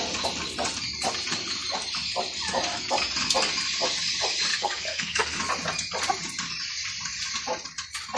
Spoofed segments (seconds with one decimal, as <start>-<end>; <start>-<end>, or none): 4.5-5.4